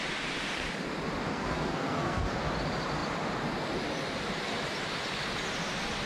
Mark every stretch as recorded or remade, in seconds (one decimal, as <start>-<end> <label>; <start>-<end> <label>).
0.0-1.3 recorded; 1.3-2.5 remade; 2.5-6.1 recorded